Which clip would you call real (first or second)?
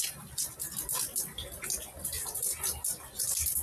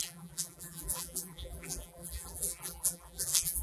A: first